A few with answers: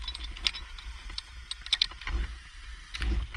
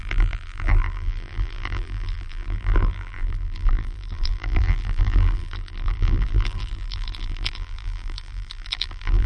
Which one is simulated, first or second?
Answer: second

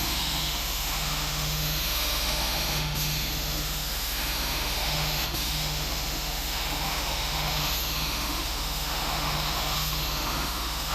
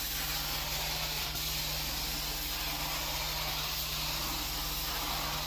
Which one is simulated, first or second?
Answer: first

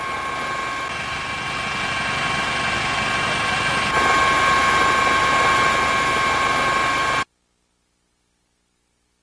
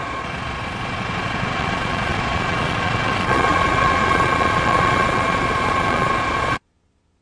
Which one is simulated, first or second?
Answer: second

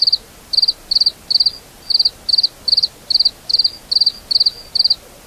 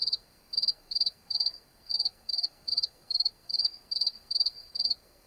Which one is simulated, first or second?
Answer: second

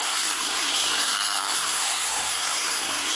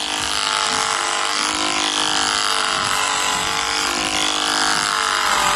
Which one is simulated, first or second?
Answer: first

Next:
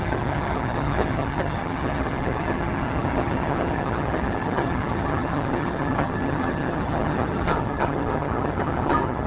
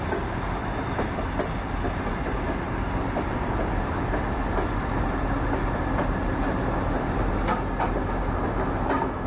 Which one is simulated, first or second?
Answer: first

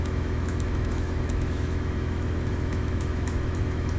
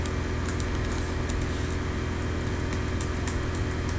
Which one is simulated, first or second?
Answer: first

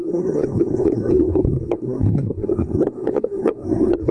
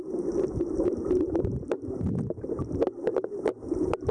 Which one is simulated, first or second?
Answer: first